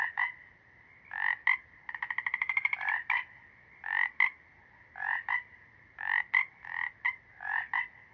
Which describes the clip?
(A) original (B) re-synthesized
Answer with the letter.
A